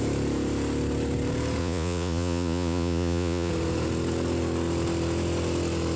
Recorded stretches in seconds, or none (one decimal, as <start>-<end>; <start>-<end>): 0.0-1.6; 3.5-6.0